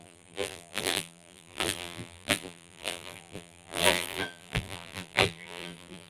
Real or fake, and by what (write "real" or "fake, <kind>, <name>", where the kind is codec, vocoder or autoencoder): fake, vocoder, BigVGAN v2